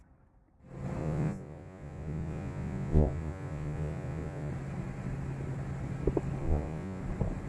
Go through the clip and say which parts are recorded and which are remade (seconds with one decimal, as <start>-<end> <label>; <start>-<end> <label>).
0.0-1.0 recorded; 1.0-4.5 remade; 4.5-6.4 recorded; 6.4-7.0 remade; 7.0-7.5 recorded